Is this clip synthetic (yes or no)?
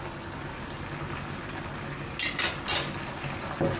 no